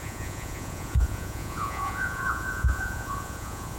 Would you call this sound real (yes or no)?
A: no